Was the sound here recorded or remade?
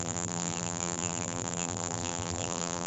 remade